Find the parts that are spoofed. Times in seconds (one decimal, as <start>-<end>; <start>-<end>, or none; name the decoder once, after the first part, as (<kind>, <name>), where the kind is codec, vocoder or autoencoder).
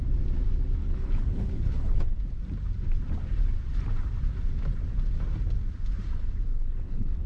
0.8-2.2 (codec, HILCodec); 6.5-7.3